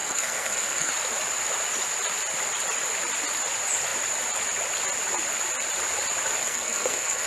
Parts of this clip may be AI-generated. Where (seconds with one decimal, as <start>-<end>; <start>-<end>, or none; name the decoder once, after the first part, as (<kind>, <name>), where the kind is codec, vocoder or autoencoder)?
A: 0.0-0.9 (codec, SNAC); 6.4-7.3